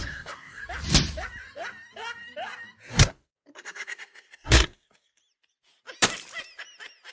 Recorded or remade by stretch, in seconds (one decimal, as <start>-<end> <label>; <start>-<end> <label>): 0.0-0.6 remade; 0.6-2.9 recorded; 2.9-5.2 remade; 5.2-7.1 recorded